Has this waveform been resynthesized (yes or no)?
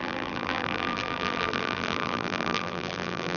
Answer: yes